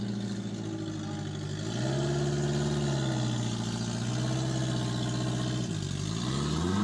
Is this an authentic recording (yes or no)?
yes